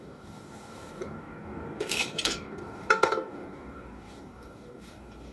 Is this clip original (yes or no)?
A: no